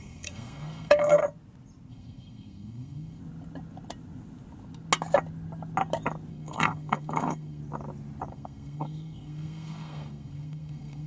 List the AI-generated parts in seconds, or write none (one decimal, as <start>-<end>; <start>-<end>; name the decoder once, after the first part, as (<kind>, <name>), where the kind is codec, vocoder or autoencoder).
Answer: 0.0-1.2 (codec, SNAC); 1.9-3.2; 6.3-7.6; 8.3-11.1